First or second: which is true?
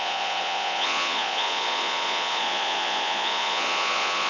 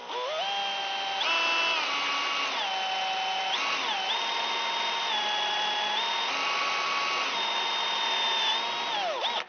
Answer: second